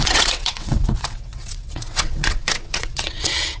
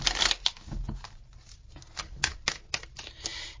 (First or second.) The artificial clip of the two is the first